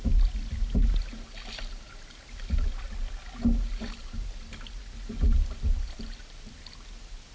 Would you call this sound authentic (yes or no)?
yes